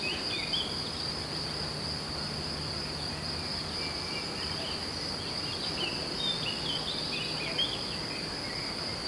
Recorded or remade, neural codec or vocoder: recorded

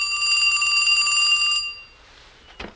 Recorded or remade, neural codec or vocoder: recorded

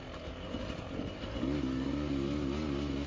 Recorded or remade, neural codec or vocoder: recorded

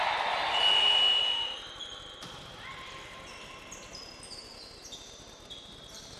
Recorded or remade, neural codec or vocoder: recorded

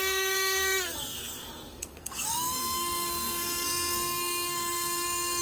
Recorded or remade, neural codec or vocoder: remade, codec, SNAC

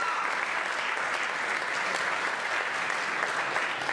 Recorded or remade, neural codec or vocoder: recorded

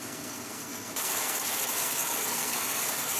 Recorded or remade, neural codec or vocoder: remade, codec, SNAC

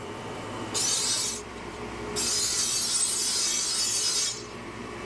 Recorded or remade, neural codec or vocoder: remade, vocoder, BigVGAN v2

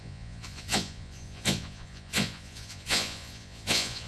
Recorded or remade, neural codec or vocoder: remade, vocoder, Vocos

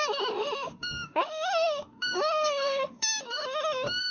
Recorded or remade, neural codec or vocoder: remade, autoencoder, DAC-VAE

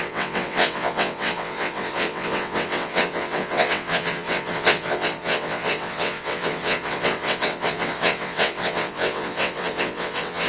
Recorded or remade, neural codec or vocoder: remade, vocoder, WaveNeXt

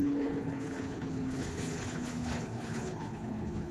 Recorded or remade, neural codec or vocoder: remade, codec, HILCodec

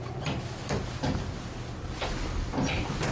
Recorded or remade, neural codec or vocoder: recorded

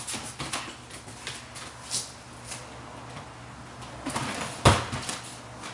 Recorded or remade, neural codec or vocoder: recorded